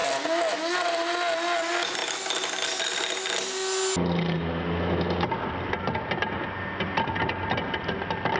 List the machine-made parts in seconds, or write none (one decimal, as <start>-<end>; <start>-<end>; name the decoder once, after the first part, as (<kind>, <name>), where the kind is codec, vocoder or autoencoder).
none